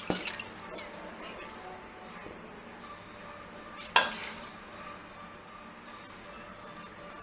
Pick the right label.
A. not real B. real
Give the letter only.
B